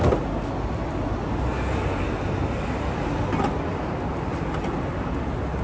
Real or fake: real